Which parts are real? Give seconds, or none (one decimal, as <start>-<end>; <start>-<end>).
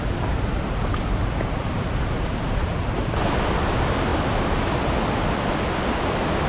0.0-6.5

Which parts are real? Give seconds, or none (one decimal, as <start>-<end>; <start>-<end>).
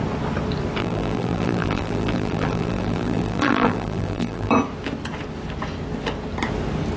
0.0-0.8; 4.5-7.0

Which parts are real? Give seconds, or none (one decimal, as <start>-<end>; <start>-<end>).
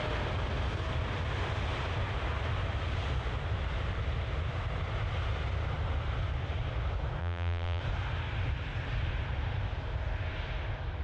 0.0-7.2; 7.8-11.0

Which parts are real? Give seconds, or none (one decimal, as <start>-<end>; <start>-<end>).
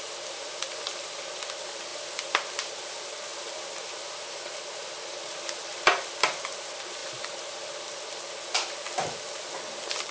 0.0-0.5; 1.4-1.9; 2.7-3.3; 6.1-7.0; 8.0-10.1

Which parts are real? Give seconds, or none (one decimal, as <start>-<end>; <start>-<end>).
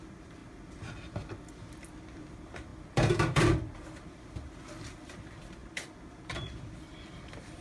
0.4-1.5